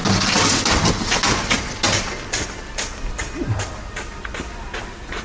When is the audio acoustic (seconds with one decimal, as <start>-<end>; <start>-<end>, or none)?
0.0-5.2